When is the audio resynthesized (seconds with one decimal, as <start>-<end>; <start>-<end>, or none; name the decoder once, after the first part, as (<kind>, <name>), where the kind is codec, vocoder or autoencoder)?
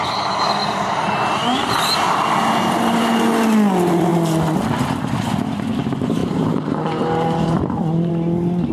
0.6-1.7 (vocoder, BigVGAN v2); 6.2-8.1